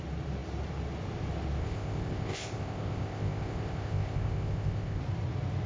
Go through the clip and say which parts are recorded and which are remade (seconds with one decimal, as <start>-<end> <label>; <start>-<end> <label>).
0.0-1.6 recorded; 1.6-5.0 remade; 5.0-5.7 recorded